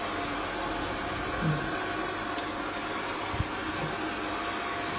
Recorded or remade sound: recorded